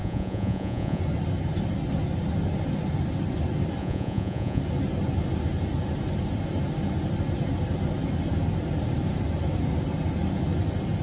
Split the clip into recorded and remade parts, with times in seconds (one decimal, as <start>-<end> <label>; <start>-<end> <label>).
0.0-1.0 remade; 1.0-3.8 recorded; 3.8-4.6 remade; 4.6-11.0 recorded

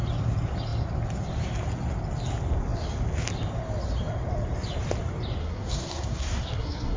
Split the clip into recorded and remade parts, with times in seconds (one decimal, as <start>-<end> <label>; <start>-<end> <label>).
0.0-5.4 recorded; 5.4-7.0 remade

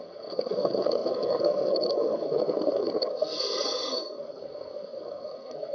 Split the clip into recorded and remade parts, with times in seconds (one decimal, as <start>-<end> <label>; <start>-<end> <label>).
0.0-5.7 remade

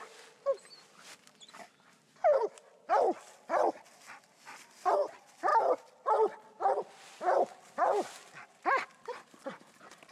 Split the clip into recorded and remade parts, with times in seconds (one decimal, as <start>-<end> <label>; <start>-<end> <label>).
0.0-10.1 recorded